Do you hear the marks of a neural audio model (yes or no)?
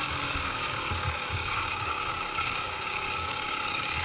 yes